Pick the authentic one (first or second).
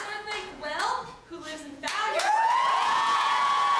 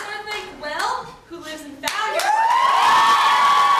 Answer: second